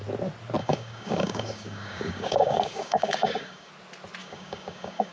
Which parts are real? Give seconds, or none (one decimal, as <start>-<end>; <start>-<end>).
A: 0.0-0.6; 3.7-4.2